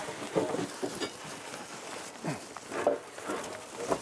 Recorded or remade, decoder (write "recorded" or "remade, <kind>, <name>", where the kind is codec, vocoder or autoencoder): recorded